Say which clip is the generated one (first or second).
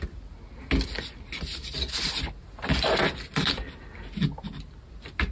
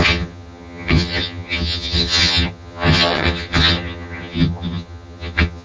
second